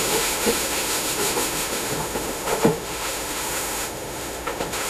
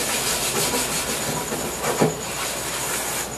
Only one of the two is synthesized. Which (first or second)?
first